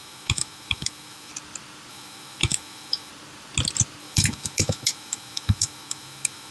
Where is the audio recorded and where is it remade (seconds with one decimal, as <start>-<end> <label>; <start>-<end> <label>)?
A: 0.0-1.3 remade; 1.3-1.9 recorded; 1.9-3.1 remade; 3.1-4.0 recorded; 4.0-6.5 remade